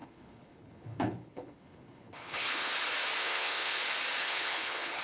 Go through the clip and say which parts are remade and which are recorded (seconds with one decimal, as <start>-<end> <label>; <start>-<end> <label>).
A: 0.0-2.7 remade; 2.7-3.2 recorded; 3.2-3.8 remade; 3.8-4.2 recorded; 4.2-5.0 remade